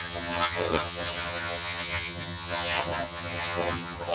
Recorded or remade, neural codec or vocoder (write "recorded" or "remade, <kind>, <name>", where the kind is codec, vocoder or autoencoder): remade, vocoder, HiFi-GAN